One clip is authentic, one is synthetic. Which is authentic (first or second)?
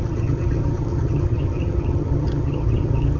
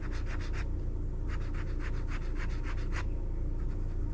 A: second